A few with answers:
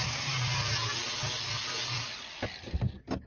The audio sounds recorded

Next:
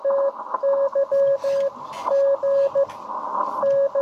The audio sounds recorded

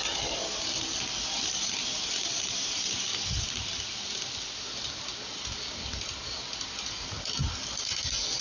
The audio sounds recorded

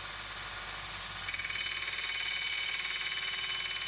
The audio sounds recorded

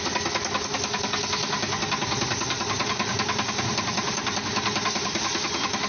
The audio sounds recorded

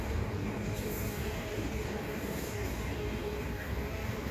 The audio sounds remade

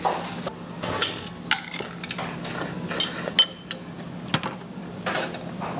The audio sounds recorded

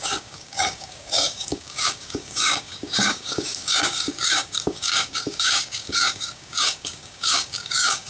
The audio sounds remade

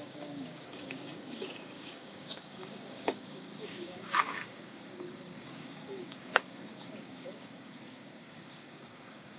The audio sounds remade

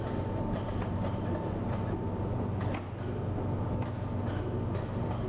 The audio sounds recorded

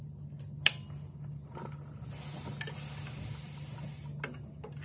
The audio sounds recorded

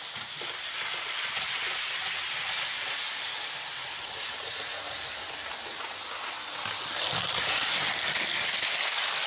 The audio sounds recorded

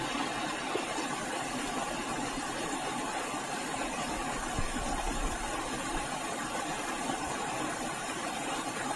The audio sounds recorded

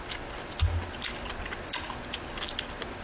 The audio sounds recorded